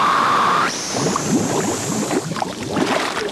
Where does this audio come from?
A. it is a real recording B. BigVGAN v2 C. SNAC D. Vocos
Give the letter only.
B